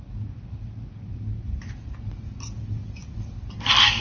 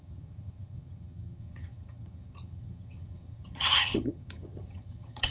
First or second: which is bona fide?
first